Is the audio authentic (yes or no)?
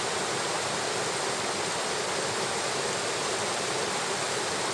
yes